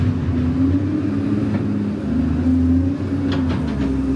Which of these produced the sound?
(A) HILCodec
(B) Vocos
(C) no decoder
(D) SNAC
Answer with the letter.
C